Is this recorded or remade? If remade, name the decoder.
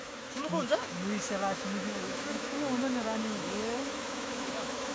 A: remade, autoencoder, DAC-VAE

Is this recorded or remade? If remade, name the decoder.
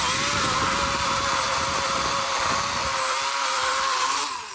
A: recorded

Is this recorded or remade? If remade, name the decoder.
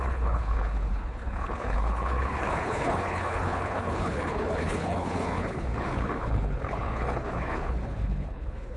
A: remade, codec, HILCodec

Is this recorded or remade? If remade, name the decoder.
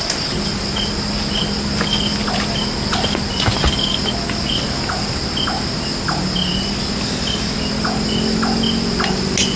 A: recorded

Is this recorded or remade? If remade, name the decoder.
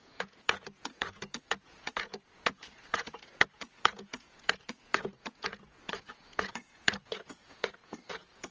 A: remade, vocoder, Vocos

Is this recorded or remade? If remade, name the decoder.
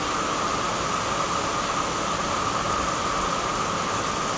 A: recorded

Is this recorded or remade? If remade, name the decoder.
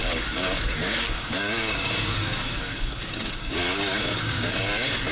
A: remade, codec, DAC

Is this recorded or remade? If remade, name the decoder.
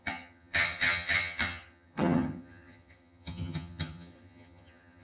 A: remade, vocoder, HiFi-GAN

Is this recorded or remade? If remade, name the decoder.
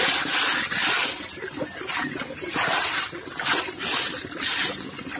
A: recorded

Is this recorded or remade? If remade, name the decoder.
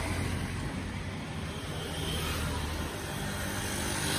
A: recorded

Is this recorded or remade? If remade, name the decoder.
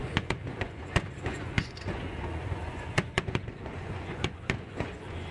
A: remade, vocoder, Vocos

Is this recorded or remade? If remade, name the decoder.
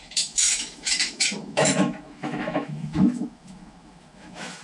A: remade, autoencoder, DAC-VAE